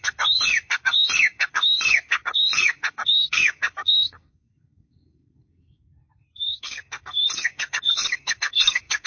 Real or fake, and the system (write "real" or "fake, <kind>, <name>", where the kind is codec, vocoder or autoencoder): fake, codec, SNAC